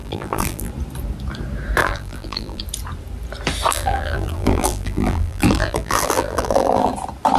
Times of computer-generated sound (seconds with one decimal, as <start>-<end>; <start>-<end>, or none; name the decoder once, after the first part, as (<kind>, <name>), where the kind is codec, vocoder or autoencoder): 0.0-0.7 (vocoder, BigVGAN v2); 1.8-2.6; 3.7-6.9